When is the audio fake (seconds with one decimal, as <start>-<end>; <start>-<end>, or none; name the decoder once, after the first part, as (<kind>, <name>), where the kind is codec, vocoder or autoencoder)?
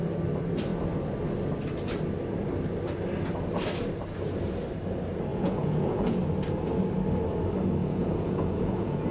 5.3-6.2 (vocoder, Vocos); 7.8-9.1